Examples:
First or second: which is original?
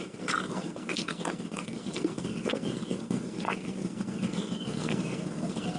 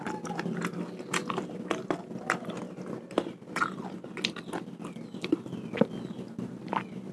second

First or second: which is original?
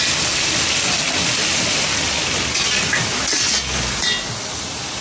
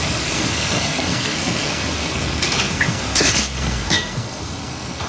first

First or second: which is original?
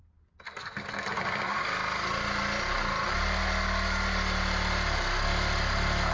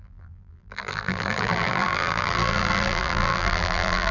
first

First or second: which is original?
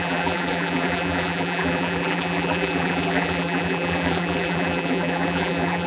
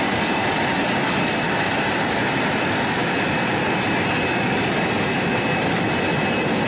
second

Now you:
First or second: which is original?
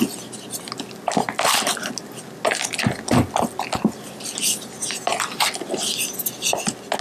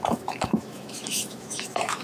first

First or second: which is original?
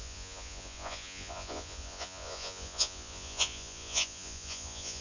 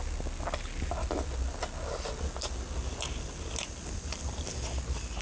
second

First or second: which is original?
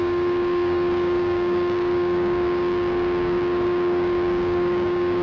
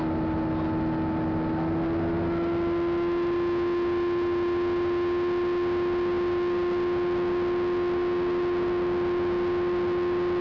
second